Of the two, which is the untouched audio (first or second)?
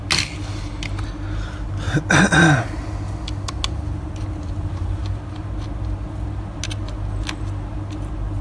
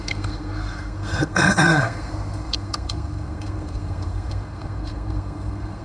first